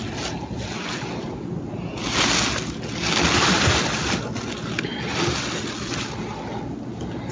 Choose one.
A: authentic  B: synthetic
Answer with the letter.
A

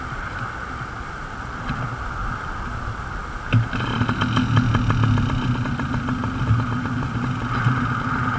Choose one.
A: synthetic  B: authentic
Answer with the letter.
B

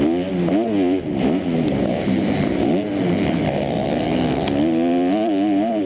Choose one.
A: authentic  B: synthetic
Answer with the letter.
A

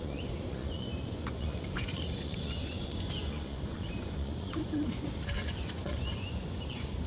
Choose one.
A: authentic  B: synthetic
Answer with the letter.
B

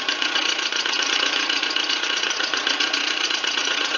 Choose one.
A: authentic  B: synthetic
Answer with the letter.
B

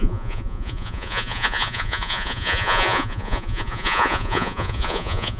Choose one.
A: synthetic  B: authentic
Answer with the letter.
A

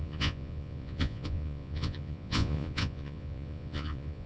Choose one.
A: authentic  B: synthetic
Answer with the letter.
B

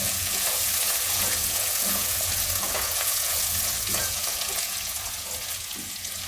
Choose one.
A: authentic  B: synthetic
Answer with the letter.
B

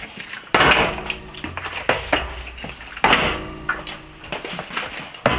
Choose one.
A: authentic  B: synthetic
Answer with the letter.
A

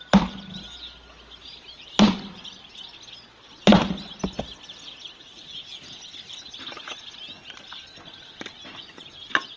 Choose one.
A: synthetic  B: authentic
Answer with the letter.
B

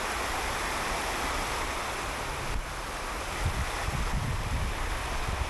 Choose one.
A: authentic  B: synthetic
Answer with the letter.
A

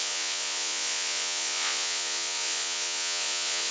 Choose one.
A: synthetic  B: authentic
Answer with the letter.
A